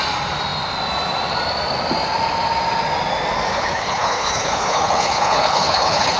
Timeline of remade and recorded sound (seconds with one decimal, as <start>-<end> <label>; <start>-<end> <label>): 0.0-3.5 recorded; 3.5-6.2 remade